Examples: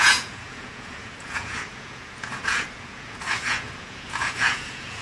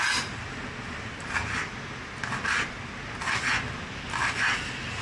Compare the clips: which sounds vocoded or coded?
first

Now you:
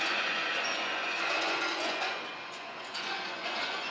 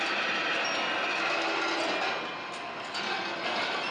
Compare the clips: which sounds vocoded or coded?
first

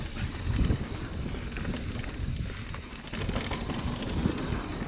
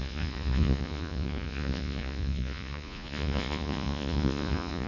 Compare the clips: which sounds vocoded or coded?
second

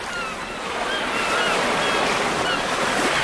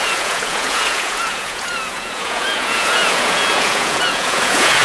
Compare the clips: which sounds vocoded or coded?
second